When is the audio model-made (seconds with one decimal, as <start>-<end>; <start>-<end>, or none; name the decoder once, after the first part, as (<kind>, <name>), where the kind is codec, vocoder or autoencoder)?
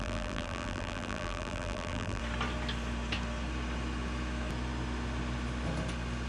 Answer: 0.0-2.2 (vocoder, BigVGAN v2)